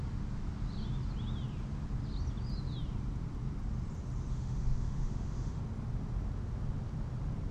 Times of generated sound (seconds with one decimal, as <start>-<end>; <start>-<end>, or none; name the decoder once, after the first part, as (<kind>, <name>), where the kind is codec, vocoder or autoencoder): 4.3-5.6 (autoencoder, DAC-VAE)